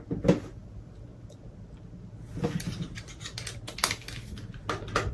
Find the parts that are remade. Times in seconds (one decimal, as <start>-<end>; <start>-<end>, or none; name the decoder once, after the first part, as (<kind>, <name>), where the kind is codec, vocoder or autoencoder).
none